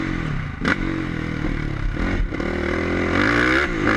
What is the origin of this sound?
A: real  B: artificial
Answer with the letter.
A